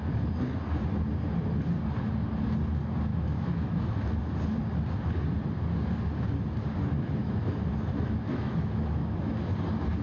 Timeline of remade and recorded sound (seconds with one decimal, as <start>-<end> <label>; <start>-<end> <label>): 0.0-3.1 recorded; 3.1-4.2 remade; 4.2-7.2 recorded; 7.2-9.3 remade; 9.3-10.0 recorded